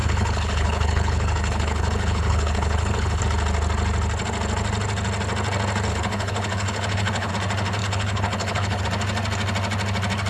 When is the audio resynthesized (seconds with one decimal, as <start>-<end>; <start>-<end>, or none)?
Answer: 0.0-3.2; 5.9-7.3; 7.8-8.8